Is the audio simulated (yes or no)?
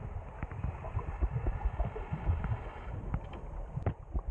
no